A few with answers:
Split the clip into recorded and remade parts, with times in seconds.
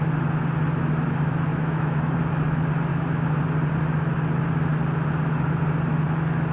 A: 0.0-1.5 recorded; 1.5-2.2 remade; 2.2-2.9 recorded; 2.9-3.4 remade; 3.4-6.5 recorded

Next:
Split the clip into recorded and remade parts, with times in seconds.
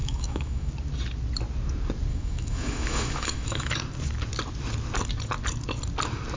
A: 0.0-0.7 remade; 0.7-2.1 recorded; 2.1-3.7 remade; 3.7-6.4 recorded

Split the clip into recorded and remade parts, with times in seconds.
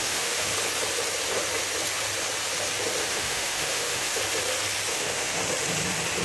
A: 0.0-0.5 remade; 0.5-3.1 recorded; 3.1-4.2 remade; 4.2-4.9 recorded; 4.9-5.4 remade; 5.4-6.2 recorded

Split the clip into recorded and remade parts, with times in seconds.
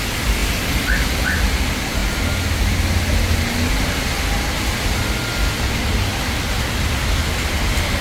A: 0.0-8.0 recorded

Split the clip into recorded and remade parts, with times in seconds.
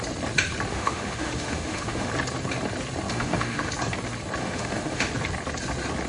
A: 0.0-0.7 recorded; 0.7-2.1 remade; 2.1-3.1 recorded; 3.1-3.7 remade; 3.7-4.4 recorded; 4.4-5.1 remade; 5.1-6.1 recorded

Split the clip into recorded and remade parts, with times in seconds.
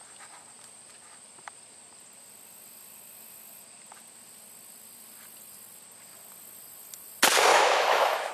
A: 0.0-7.5 recorded; 7.5-8.3 remade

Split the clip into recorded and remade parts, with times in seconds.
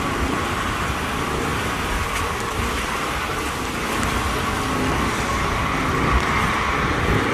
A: 0.0-7.3 recorded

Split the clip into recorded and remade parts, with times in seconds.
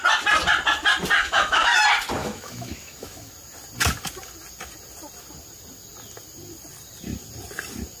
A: 0.0-1.2 recorded; 1.2-1.8 remade; 1.8-2.2 recorded; 2.2-3.3 remade; 3.3-8.0 recorded